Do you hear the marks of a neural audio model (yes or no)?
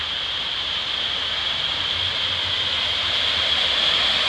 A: yes